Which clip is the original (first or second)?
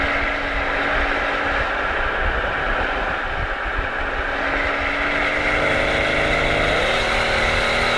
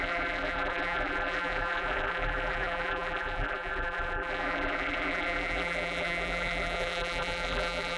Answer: first